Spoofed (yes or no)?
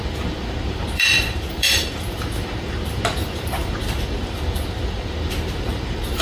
yes